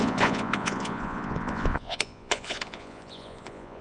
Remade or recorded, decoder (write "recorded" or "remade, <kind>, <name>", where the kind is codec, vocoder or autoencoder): remade, vocoder, Vocos